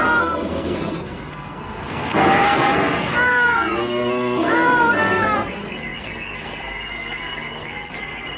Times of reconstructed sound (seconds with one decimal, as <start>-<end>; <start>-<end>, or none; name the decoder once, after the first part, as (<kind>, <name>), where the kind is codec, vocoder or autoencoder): 0.0-8.4 (codec, SNAC)